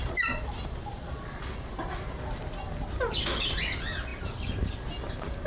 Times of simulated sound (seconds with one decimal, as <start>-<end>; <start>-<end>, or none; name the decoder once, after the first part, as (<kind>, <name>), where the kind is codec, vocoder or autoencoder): 0.0-1.9 (vocoder, BigVGAN v2)